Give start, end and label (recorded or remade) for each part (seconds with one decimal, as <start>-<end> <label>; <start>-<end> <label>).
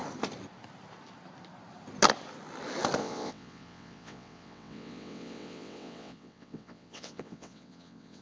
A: 0.0-3.0 recorded; 3.0-8.2 remade